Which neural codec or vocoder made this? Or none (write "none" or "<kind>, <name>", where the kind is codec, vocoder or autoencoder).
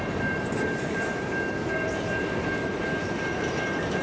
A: vocoder, BigVGAN v2